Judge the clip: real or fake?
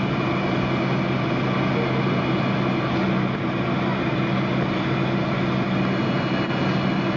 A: real